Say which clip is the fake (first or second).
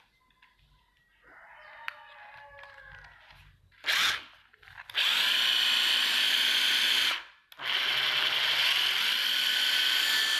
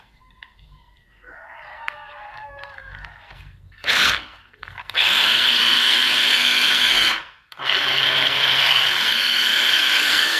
second